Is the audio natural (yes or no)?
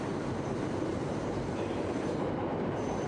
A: no